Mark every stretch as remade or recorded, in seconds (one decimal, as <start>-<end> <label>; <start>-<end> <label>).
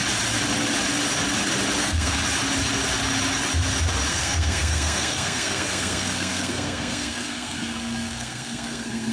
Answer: 0.0-1.8 recorded; 1.8-2.2 remade; 2.2-4.1 recorded; 4.1-9.1 remade